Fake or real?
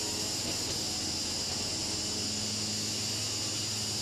real